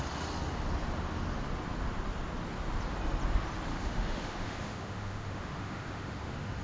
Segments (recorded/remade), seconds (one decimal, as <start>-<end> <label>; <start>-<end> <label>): 0.0-3.7 recorded; 3.7-6.6 remade